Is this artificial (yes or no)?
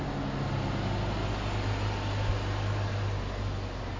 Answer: no